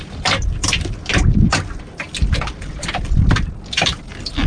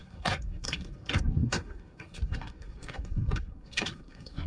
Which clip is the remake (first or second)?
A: second